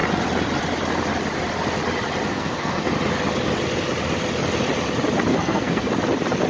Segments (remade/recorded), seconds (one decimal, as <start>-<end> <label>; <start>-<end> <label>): 0.0-2.3 recorded; 2.3-2.9 remade; 2.9-5.3 recorded; 5.3-5.9 remade; 5.9-6.5 recorded